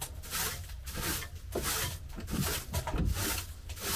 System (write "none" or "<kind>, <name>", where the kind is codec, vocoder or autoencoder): none